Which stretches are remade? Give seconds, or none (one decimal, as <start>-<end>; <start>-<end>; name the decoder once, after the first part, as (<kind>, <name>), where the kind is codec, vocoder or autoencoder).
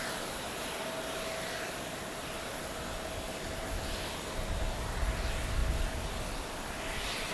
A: none